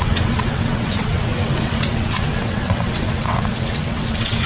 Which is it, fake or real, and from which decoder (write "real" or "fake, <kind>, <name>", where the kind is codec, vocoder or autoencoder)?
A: fake, vocoder, WaveNeXt